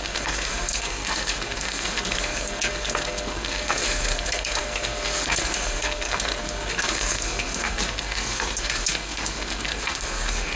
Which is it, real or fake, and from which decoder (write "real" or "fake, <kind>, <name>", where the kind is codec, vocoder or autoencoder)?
fake, codec, SNAC